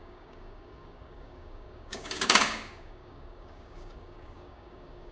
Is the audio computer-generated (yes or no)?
yes